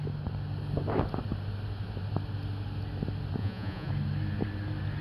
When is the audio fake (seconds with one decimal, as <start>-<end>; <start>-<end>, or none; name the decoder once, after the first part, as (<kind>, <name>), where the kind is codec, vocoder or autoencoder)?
3.4-3.9 (vocoder, Vocos)